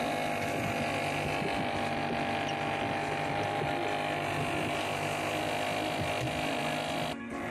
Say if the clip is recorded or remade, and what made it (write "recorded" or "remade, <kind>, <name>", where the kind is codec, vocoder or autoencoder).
recorded